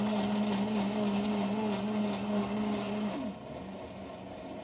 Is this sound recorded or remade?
recorded